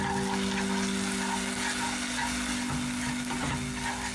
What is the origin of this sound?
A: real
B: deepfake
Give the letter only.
A